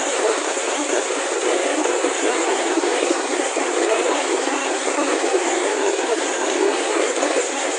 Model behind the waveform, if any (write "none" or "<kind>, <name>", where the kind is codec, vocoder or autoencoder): codec, SNAC